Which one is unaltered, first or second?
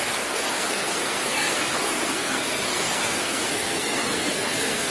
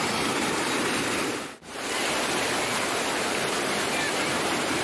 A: second